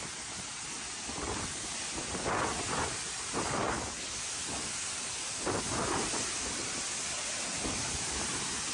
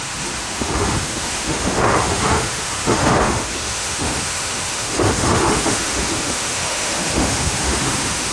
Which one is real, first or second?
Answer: first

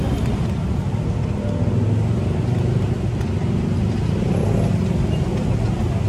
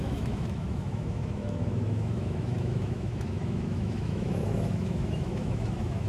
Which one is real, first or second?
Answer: first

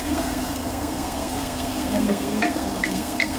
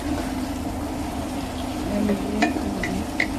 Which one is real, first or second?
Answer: second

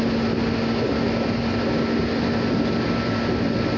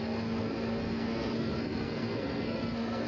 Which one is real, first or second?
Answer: first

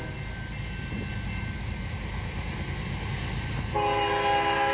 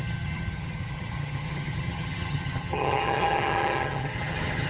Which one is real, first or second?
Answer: first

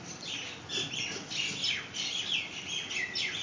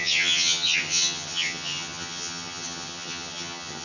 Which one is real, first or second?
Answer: first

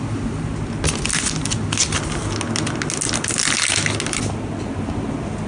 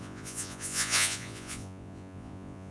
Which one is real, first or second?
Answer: first